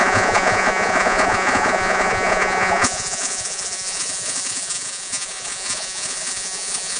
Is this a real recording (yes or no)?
no